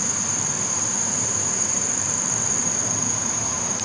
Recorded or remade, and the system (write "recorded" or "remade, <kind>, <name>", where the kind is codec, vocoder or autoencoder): remade, vocoder, BigVGAN v2